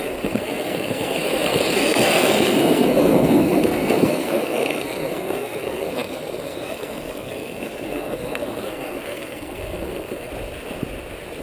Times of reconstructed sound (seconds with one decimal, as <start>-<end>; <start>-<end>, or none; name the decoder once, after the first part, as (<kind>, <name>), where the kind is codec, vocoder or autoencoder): 0.0-10.3 (codec, SNAC)